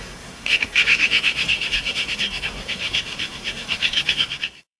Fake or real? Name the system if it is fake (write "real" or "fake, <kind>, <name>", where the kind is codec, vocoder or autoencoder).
fake, codec, SNAC